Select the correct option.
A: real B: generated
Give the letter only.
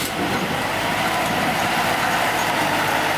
B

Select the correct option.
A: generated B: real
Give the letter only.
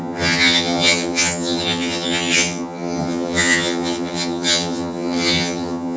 A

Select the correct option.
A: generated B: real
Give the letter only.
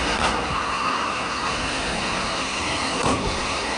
A